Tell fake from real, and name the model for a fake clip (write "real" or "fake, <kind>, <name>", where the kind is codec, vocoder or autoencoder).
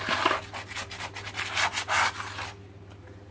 real